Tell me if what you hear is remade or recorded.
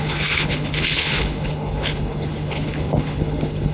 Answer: remade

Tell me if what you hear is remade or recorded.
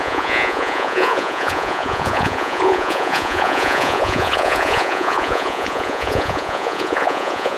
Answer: remade